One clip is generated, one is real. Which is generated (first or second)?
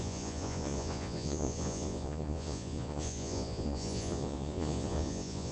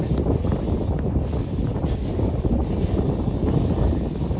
first